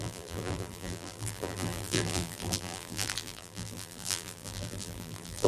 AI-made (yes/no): yes